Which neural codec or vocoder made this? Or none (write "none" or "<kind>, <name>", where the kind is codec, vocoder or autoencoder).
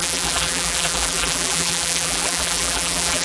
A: vocoder, BigVGAN v2